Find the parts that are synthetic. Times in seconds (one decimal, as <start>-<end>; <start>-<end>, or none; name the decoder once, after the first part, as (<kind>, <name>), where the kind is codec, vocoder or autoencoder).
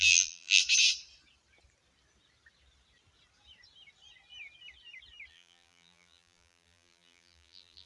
0.0-0.6 (vocoder, BigVGAN v2); 5.3-7.9